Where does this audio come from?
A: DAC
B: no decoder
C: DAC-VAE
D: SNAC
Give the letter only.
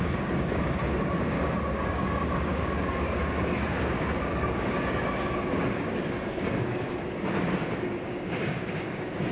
A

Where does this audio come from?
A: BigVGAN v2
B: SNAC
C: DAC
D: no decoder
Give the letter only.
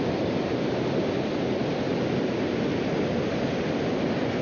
D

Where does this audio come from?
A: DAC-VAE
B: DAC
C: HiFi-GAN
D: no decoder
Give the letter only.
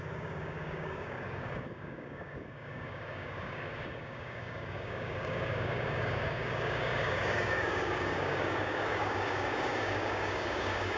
B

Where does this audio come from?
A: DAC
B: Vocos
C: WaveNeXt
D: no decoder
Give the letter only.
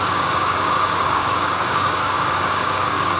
A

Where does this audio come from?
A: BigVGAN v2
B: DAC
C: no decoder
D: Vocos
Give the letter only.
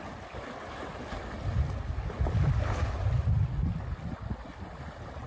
C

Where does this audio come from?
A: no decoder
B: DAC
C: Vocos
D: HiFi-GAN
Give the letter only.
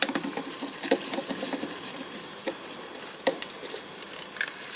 A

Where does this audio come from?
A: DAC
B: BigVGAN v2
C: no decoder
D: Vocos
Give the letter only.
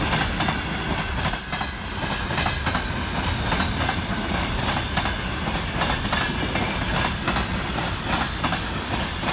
C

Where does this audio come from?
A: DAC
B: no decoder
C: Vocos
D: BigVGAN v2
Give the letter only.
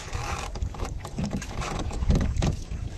A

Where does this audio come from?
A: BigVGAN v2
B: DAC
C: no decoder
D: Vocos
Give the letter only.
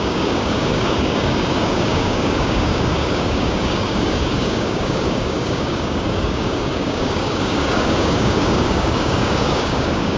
B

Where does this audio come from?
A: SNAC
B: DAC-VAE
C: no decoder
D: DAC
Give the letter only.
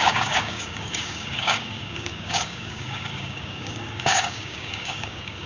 D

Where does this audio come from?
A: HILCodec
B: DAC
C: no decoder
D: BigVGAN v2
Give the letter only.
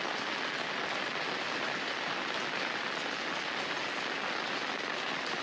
C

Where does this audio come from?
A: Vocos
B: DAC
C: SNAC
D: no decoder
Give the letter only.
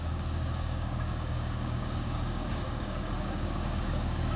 B